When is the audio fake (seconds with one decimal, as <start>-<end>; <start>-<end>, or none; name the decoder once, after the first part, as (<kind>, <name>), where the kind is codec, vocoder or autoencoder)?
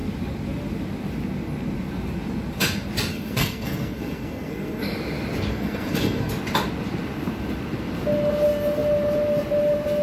3.1-4.8 (codec, SNAC); 5.5-6.3